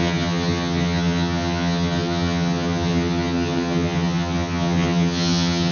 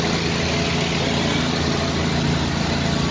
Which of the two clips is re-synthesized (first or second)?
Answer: first